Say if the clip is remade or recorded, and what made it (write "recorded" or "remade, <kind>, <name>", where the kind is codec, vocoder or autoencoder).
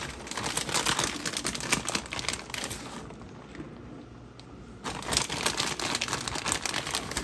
recorded